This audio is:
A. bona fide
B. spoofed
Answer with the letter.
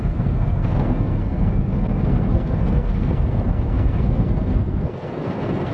B